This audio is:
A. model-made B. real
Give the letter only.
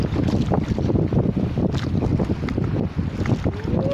B